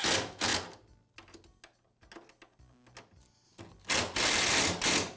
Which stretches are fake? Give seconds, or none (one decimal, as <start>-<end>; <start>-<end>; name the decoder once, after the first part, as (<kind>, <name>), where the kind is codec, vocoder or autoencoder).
none